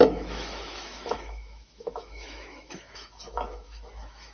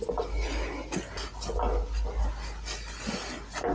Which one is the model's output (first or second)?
first